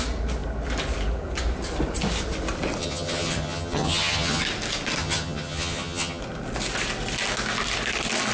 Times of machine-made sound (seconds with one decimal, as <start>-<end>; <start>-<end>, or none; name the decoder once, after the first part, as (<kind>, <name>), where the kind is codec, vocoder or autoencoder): 2.8-4.4 (vocoder, HiFi-GAN); 5.0-6.2